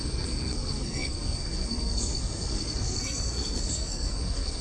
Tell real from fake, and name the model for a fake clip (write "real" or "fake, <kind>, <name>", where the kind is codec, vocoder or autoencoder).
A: fake, codec, SNAC